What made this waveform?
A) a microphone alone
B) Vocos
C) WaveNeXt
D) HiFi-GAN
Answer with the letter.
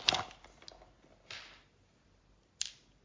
A